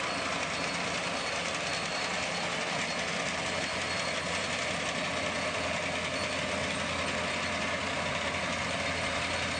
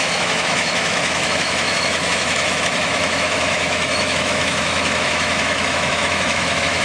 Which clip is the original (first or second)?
first